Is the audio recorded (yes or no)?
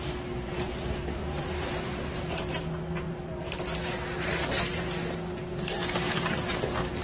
no